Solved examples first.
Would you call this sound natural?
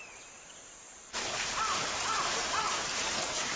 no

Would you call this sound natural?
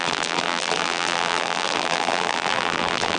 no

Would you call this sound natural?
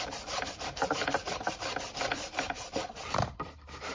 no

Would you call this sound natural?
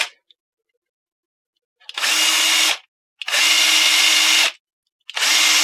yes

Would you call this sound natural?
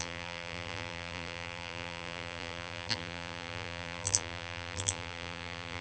no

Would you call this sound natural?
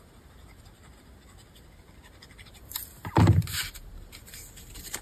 yes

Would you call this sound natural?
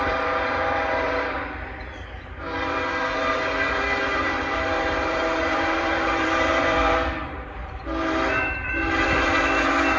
no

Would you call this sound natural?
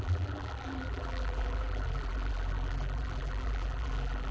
no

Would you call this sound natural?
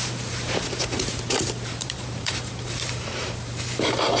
no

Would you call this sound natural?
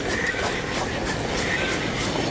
yes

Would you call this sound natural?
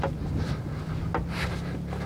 yes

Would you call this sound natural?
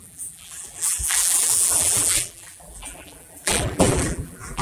no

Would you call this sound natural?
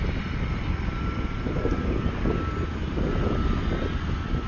yes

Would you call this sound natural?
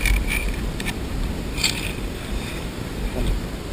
no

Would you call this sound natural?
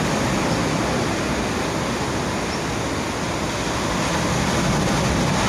yes